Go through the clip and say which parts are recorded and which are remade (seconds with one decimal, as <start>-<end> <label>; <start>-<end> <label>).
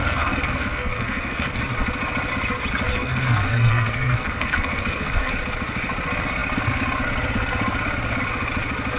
0.0-1.6 remade; 1.6-2.9 recorded; 2.9-5.3 remade; 5.3-9.0 recorded